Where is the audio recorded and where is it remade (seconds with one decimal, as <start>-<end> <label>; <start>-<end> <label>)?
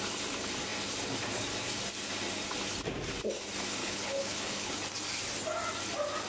0.0-3.8 recorded; 3.8-4.7 remade; 4.7-6.3 recorded